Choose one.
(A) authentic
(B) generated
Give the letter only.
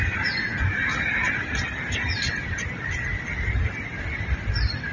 A